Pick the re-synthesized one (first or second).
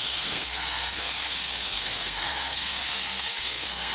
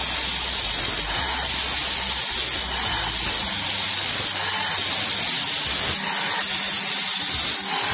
first